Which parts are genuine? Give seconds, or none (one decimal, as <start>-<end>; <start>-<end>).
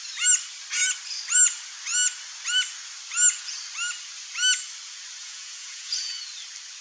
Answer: 0.0-5.2; 6.2-6.8